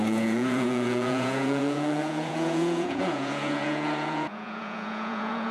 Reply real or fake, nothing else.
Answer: fake